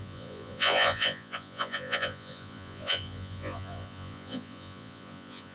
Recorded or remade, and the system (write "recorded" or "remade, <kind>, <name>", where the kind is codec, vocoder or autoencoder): remade, vocoder, Vocos